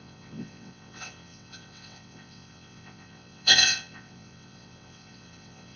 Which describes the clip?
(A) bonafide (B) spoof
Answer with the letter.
B